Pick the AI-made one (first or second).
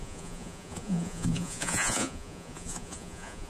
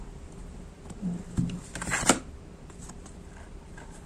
first